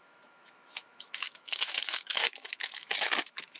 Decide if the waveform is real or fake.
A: fake